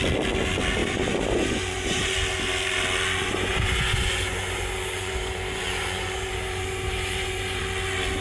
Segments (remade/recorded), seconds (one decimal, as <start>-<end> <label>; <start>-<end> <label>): 0.0-0.8 recorded; 0.8-2.1 remade; 2.1-3.2 recorded; 3.2-7.6 remade; 7.6-8.2 recorded